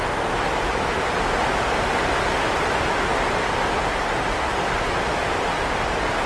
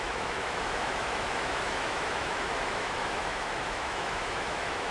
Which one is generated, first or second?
second